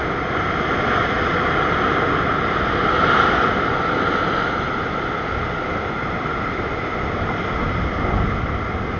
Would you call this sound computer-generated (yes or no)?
no